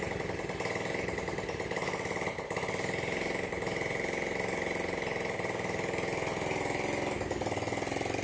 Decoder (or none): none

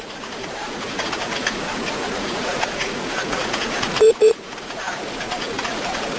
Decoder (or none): vocoder, Vocos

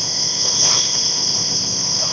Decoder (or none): codec, ZipCodec